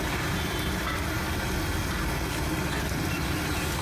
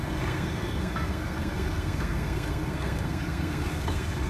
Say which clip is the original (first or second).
first